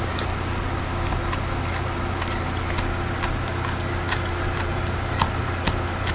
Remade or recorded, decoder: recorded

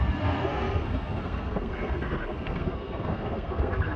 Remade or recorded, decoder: remade, codec, SNAC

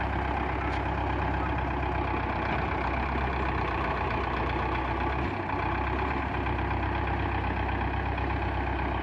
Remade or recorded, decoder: recorded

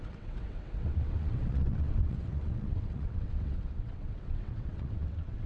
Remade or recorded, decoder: remade, vocoder, WaveNeXt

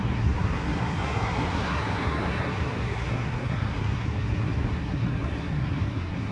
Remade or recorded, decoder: remade, codec, SNAC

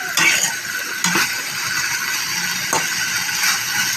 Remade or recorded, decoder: recorded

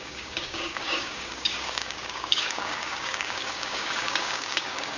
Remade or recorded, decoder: remade, codec, DAC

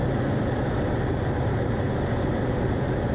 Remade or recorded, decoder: remade, vocoder, BigVGAN v2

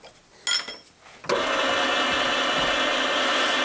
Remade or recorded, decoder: recorded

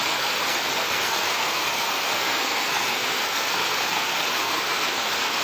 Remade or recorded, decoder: remade, codec, SNAC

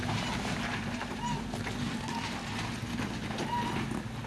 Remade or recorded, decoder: recorded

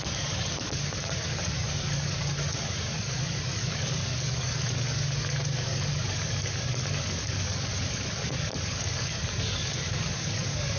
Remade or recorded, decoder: remade, codec, DAC